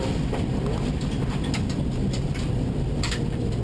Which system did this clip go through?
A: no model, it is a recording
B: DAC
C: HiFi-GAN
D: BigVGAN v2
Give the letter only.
A